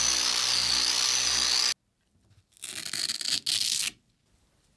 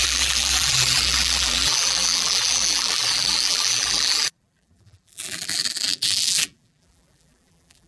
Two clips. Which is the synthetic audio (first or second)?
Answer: second